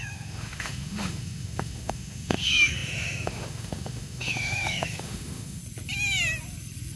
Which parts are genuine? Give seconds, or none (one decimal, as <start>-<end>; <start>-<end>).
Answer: 5.6-7.0

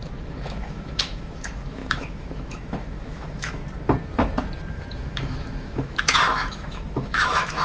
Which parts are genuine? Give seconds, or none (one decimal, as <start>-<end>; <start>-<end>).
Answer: 3.6-4.7